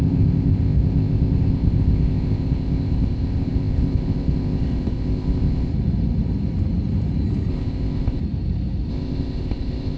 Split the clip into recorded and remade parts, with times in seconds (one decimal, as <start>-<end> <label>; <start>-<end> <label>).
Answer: 0.0-5.7 remade; 5.7-7.5 recorded; 7.5-8.2 remade; 8.2-8.9 recorded; 8.9-10.0 remade